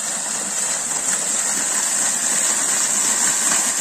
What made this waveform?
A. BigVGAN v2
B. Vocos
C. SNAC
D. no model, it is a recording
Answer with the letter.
D